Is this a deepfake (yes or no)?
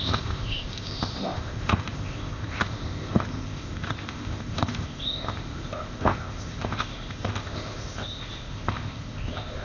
yes